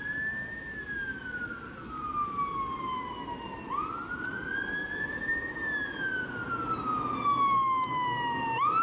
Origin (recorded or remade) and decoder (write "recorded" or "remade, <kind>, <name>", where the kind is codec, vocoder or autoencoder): recorded